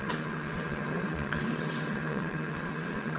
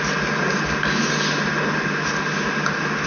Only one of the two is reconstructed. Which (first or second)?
first